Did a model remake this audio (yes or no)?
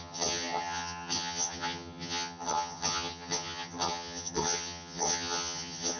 yes